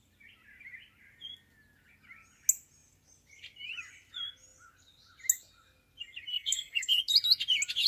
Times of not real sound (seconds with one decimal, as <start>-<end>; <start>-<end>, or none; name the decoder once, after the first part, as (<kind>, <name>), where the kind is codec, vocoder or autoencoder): 6.3-7.0 (codec, SNAC)